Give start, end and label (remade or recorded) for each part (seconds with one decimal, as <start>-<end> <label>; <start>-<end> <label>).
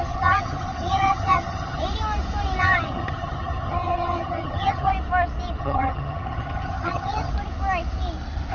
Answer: 0.0-1.8 remade; 1.8-2.6 recorded; 2.6-4.9 remade; 4.9-5.6 recorded; 5.6-7.3 remade; 7.3-8.5 recorded